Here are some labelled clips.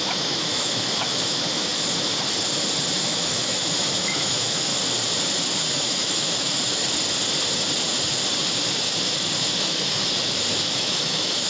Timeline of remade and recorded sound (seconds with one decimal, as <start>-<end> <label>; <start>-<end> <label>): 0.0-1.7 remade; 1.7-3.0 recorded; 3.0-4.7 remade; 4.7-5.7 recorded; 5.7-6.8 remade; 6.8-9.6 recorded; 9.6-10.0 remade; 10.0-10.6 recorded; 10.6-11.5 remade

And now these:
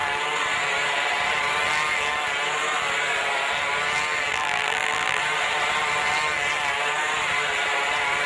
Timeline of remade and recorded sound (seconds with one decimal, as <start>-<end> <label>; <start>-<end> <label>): 0.0-4.3 recorded; 4.3-5.2 remade; 5.2-8.3 recorded

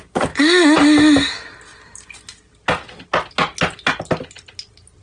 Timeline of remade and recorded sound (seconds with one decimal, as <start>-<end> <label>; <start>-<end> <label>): 0.0-5.0 recorded

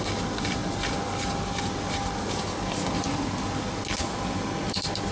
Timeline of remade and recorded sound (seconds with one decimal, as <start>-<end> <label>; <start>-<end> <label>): 0.0-5.1 recorded